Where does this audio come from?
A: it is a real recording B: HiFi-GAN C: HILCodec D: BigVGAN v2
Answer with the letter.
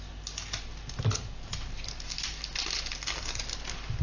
A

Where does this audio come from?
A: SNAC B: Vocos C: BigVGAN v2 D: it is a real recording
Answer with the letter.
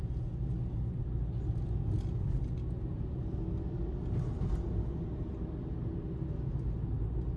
D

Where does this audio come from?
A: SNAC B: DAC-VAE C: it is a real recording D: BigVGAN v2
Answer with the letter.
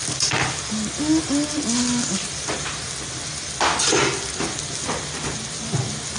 C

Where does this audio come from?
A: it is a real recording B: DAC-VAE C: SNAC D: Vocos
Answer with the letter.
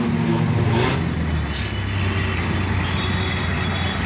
A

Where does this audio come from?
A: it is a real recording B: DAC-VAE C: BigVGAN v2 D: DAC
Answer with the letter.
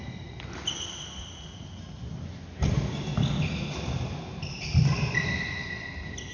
A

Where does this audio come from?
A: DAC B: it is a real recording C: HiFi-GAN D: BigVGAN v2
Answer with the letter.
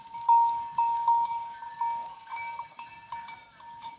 A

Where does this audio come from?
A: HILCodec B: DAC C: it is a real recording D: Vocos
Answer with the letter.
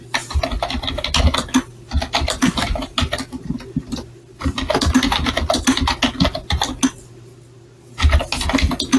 C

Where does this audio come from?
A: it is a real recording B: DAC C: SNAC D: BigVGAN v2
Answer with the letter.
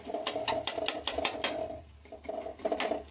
A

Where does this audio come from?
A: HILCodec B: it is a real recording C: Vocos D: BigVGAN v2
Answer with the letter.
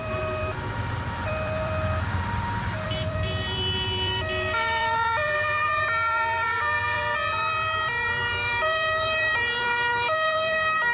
D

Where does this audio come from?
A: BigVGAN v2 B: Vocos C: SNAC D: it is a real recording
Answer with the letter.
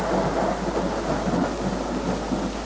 D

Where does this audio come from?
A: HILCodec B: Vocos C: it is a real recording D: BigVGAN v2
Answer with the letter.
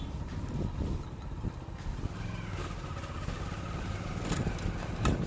C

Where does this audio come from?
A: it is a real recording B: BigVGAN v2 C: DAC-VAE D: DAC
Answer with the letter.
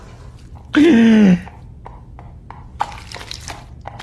A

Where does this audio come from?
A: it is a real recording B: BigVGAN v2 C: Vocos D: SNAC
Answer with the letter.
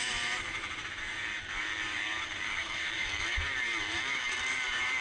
B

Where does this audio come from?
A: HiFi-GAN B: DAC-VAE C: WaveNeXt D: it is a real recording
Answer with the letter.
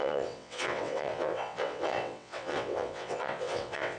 C